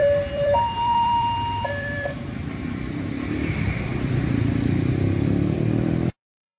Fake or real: fake